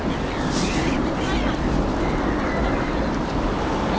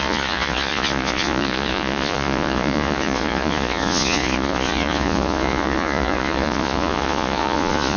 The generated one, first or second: second